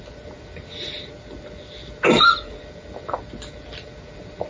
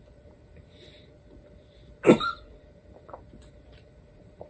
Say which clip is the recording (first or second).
first